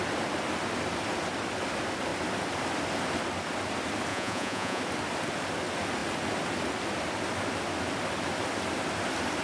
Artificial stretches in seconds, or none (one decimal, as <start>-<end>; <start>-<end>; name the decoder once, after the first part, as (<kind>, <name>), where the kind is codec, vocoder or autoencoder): 4.1-4.8 (vocoder, Vocos)